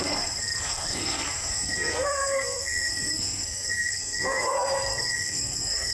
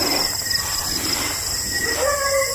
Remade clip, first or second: first